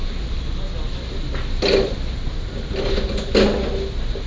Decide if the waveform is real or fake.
real